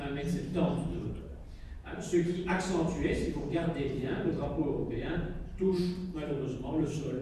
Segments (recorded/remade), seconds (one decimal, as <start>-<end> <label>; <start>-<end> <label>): 0.0-6.0 remade; 6.0-6.7 recorded; 6.7-7.2 remade